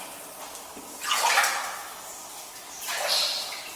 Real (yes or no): yes